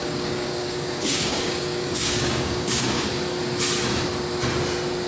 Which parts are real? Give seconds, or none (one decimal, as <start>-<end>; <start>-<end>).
3.1-5.1